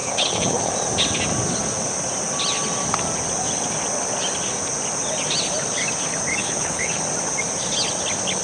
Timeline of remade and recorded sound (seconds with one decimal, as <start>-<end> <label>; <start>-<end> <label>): 0.0-0.7 remade; 0.7-6.4 recorded; 6.4-7.0 remade; 7.0-8.4 recorded